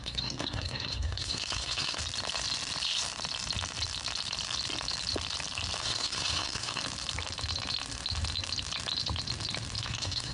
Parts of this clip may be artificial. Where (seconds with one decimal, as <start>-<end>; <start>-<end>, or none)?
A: 0.0-2.0; 5.8-6.8; 9.8-10.3